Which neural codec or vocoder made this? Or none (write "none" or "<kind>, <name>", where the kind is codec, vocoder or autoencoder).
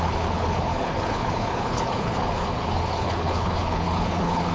codec, HILCodec